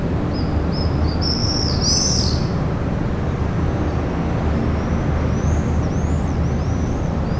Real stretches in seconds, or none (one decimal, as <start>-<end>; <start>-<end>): 0.0-7.4